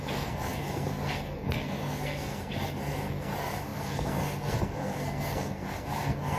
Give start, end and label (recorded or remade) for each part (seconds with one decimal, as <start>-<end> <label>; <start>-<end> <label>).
0.0-6.4 remade